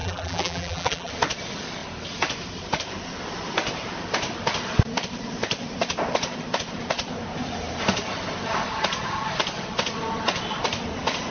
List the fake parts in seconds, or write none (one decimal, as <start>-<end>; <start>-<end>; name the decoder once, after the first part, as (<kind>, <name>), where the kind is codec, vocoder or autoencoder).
0.0-1.1 (vocoder, BigVGAN v2)